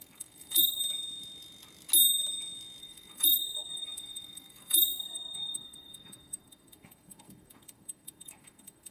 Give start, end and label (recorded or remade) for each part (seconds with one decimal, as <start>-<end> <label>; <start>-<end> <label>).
0.0-0.8 remade; 0.8-2.8 recorded; 2.8-8.9 remade